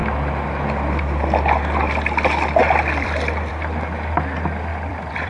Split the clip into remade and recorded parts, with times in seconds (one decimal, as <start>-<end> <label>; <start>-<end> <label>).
0.0-2.6 recorded; 2.6-3.5 remade; 3.5-4.7 recorded; 4.7-5.3 remade